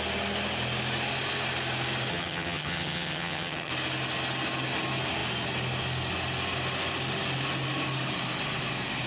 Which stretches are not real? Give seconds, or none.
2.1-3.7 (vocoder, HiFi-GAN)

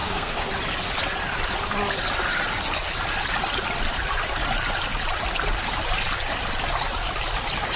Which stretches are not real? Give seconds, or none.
0.0-0.5 (codec, SNAC)